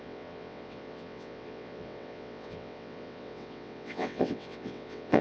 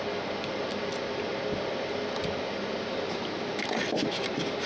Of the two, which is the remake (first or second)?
first